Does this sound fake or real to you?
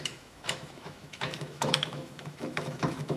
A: fake